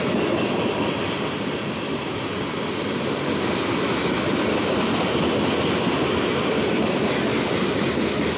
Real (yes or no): yes